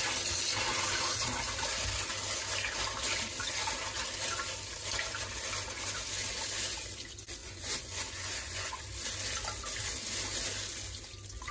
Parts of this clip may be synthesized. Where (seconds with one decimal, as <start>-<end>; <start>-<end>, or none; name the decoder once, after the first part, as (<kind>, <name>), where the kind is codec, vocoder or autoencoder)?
7.4-8.8 (vocoder, Vocos)